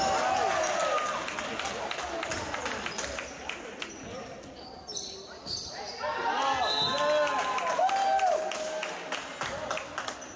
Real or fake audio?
real